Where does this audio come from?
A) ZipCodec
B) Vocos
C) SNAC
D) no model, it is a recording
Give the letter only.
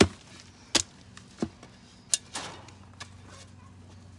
D